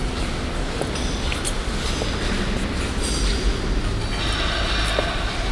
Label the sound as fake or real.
real